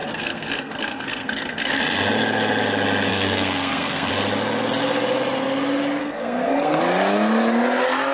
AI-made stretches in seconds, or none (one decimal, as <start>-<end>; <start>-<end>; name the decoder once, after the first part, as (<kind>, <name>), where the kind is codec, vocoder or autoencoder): 0.0-1.8 (codec, SNAC); 3.1-4.1; 6.0-6.8